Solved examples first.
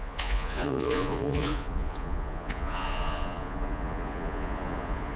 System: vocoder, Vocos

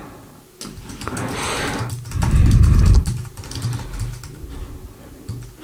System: none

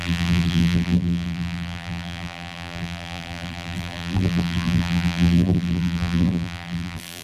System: vocoder, BigVGAN v2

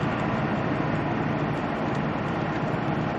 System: none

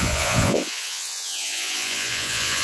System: vocoder, Vocos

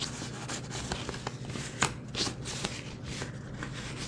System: none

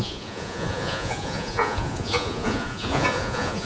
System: vocoder, Vocos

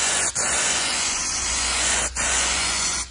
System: vocoder, Vocos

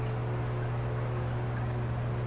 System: none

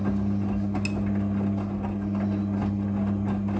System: none